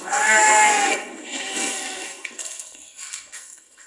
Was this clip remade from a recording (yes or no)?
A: yes